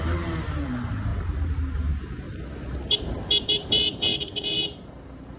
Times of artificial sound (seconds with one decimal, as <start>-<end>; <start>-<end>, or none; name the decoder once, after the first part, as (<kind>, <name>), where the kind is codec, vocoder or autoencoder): 0.0-1.1 (vocoder, BigVGAN v2); 2.9-5.4